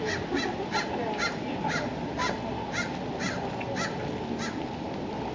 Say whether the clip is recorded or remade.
recorded